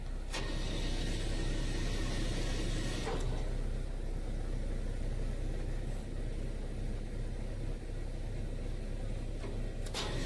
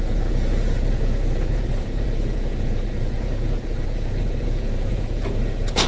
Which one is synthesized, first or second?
second